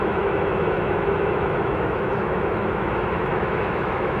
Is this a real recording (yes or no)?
no